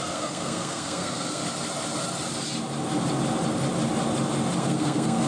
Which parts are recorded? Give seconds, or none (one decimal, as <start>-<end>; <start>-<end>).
1.4-4.6